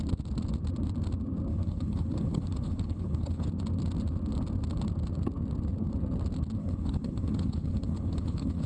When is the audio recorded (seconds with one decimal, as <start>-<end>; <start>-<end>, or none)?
0.0-1.5; 3.5-6.6